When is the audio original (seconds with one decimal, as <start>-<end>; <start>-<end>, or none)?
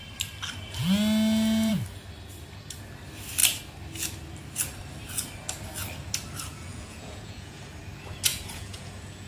0.0-6.5; 7.6-8.3